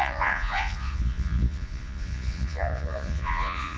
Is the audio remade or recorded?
remade